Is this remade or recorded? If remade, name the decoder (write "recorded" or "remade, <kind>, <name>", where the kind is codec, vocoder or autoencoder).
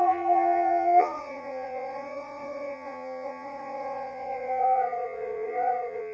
remade, vocoder, Vocos